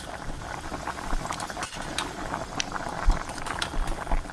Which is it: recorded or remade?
recorded